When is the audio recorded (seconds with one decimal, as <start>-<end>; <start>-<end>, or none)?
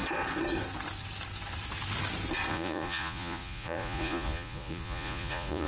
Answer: 0.0-2.5